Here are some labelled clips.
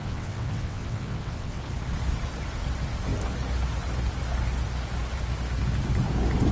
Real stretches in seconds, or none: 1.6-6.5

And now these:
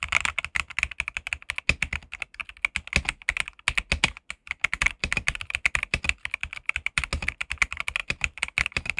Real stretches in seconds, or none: 0.0-4.4; 7.0-8.0

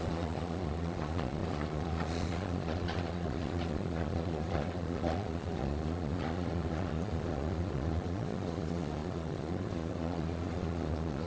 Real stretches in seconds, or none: none

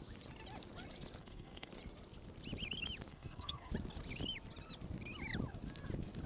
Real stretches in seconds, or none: 0.0-1.2; 1.7-3.1; 3.7-6.3

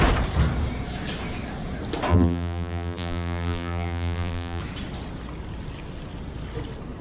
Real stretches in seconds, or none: 0.0-2.1; 4.6-7.0

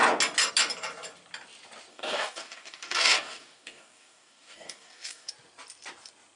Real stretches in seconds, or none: 0.0-1.9; 5.3-6.4